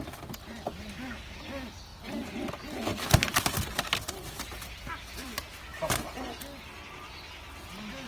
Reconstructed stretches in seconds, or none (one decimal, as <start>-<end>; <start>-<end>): 0.4-1.3; 1.9-2.5; 2.9-5.3